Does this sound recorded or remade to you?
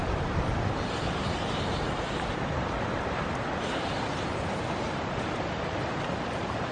remade